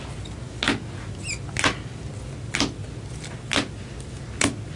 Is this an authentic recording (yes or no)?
yes